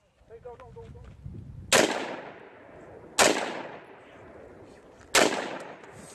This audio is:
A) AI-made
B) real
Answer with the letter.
B